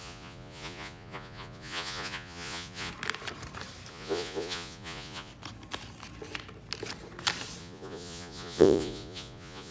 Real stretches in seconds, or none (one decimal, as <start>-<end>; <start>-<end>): 2.9-3.9; 5.3-7.6